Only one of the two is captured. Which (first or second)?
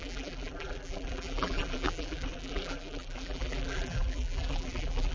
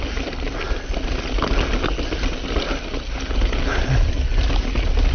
second